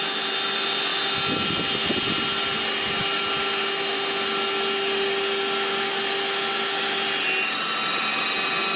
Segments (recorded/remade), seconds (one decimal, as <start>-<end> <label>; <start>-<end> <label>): 0.0-8.8 recorded